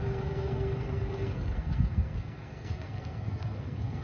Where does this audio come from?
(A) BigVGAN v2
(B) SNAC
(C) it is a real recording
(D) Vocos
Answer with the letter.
B